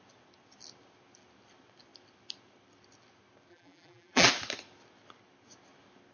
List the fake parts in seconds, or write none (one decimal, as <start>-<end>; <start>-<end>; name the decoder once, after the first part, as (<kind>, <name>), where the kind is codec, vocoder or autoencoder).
3.5-4.3 (vocoder, BigVGAN v2)